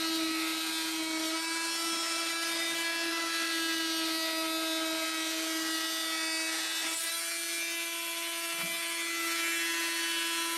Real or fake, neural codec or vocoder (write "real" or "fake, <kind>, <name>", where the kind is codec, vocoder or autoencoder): real